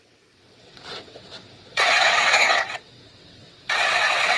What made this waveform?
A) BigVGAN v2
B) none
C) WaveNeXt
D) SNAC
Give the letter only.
C